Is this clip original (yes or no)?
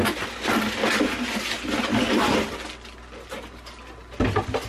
yes